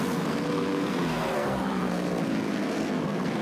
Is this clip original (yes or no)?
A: no